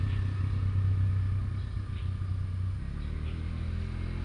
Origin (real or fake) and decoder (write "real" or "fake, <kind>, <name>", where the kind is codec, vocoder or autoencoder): real